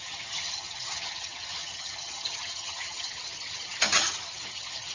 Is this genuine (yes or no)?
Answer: no